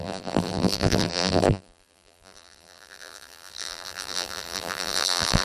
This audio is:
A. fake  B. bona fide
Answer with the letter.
A